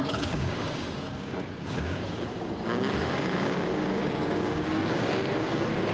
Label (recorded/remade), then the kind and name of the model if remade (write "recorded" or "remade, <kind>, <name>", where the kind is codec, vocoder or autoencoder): remade, codec, DAC